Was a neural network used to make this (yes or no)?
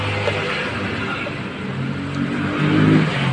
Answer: no